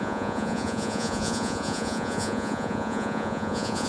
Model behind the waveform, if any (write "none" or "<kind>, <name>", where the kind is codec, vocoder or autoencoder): vocoder, Vocos